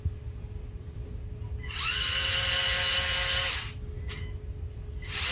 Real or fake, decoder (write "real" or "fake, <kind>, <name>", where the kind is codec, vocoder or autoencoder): real